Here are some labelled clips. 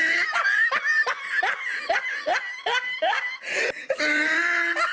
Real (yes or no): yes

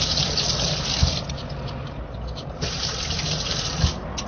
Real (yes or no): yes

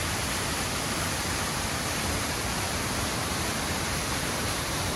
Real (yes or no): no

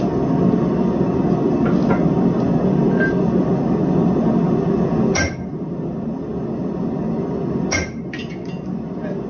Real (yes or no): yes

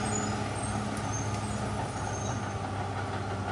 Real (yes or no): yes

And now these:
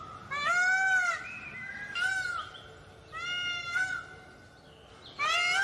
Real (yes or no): yes